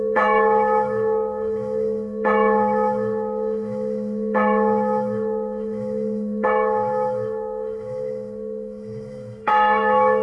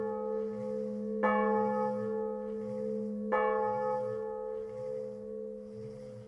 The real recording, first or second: second